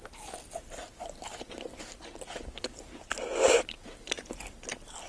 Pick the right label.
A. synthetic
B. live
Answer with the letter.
B